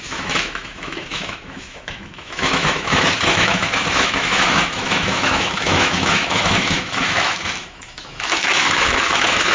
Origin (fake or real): fake